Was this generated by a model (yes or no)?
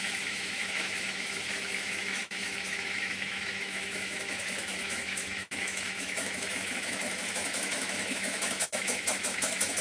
yes